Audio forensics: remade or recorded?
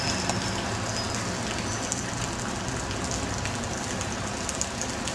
recorded